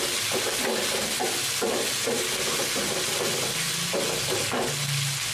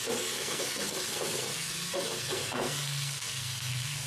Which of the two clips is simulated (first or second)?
second